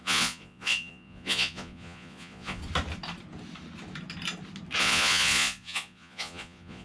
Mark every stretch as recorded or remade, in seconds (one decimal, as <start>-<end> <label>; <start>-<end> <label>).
0.0-2.6 remade; 2.6-4.8 recorded; 4.8-6.8 remade